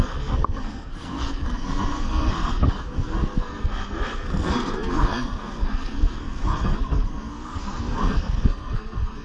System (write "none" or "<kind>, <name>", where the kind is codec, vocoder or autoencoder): codec, SNAC